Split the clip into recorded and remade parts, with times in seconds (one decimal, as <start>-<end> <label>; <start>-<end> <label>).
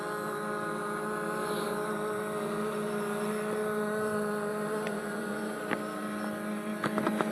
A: 0.0-4.5 recorded; 4.5-5.6 remade; 5.6-7.3 recorded